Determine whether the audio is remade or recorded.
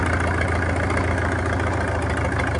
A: recorded